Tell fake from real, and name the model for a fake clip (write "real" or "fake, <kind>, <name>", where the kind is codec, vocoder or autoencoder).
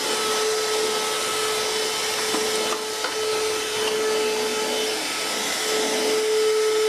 real